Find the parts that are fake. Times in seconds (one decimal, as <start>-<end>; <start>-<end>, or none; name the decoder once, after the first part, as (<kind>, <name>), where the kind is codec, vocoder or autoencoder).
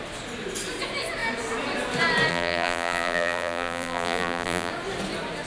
2.3-4.7 (vocoder, BigVGAN v2)